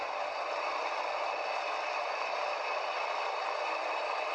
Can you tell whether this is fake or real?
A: real